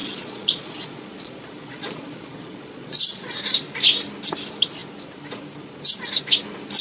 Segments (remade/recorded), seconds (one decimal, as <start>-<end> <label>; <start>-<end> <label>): 0.0-3.3 remade; 3.3-6.8 recorded